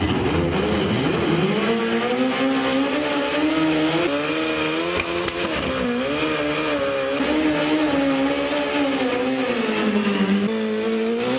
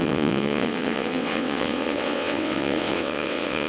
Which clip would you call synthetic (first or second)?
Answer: second